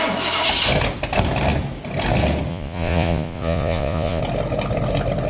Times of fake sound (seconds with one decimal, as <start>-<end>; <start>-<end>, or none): 2.5-4.2